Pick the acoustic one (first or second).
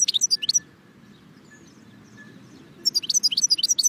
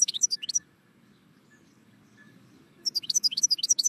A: first